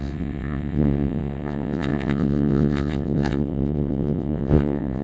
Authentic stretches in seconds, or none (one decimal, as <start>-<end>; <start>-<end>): none